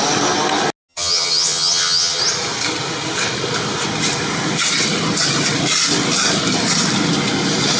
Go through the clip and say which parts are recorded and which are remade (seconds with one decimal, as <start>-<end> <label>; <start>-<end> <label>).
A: 0.0-0.9 recorded; 0.9-2.2 remade; 2.2-7.8 recorded

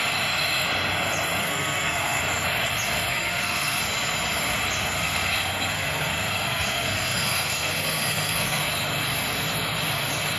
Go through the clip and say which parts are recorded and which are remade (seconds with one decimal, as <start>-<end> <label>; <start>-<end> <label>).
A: 0.0-1.4 recorded; 1.4-2.2 remade; 2.2-3.1 recorded; 3.1-3.8 remade; 3.8-4.8 recorded; 4.8-8.6 remade; 8.6-10.4 recorded

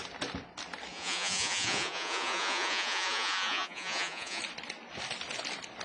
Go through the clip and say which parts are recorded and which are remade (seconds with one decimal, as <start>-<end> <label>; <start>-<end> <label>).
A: 0.0-0.9 recorded; 0.9-4.4 remade; 4.4-5.8 recorded